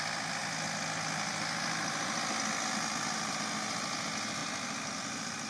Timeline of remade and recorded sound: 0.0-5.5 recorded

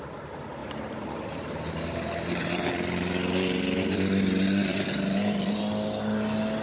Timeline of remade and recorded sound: 0.0-0.6 recorded; 0.6-2.7 remade; 2.7-4.7 recorded; 4.7-5.6 remade; 5.6-6.6 recorded

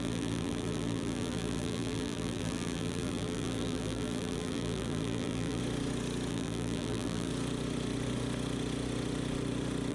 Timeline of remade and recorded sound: 0.0-5.6 remade; 5.6-6.3 recorded; 6.3-7.3 remade; 7.3-9.9 recorded

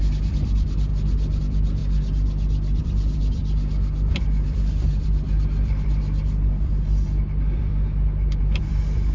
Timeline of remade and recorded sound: 0.0-0.9 remade; 0.9-1.4 recorded; 1.4-1.8 remade; 1.8-2.8 recorded; 2.8-3.4 remade; 3.4-4.1 recorded; 4.1-7.7 remade; 7.7-8.4 recorded; 8.4-9.1 remade

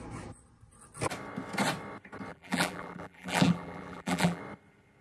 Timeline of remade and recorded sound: 0.0-2.3 recorded; 2.3-4.4 remade; 4.4-5.0 recorded

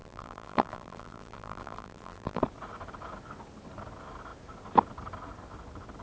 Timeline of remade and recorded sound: 0.0-2.4 remade; 2.4-6.0 recorded

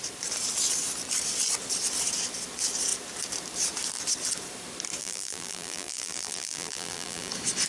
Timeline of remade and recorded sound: 0.0-5.0 recorded; 5.0-7.3 remade; 7.3-7.7 recorded